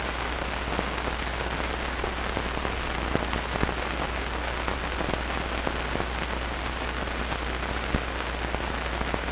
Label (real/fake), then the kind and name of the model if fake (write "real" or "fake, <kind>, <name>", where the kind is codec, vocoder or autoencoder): real